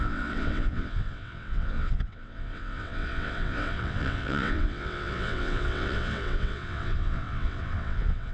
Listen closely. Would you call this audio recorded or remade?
remade